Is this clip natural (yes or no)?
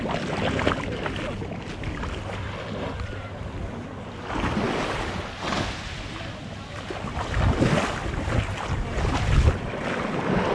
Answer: yes